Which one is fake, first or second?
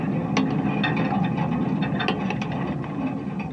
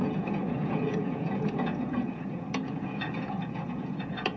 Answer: second